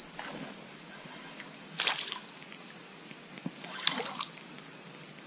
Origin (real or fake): real